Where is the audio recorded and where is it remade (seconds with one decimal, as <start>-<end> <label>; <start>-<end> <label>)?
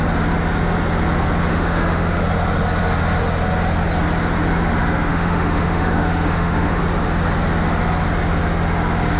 0.0-1.5 recorded; 1.5-2.2 remade; 2.2-5.1 recorded; 5.1-6.8 remade; 6.8-9.2 recorded